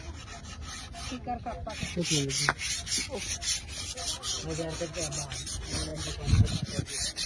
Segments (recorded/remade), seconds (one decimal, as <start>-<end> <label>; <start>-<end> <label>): 0.0-7.3 recorded